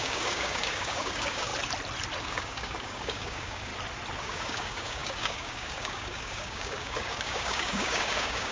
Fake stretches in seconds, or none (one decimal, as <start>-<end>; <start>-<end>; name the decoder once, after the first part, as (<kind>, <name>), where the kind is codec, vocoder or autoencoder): 0.0-1.5 (codec, DAC); 2.2-3.7; 4.2-8.5